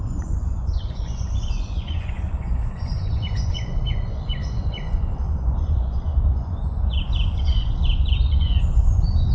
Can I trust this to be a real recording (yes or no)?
no